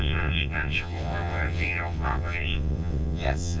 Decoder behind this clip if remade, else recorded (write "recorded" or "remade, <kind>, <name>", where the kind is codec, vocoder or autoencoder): remade, vocoder, WaveNeXt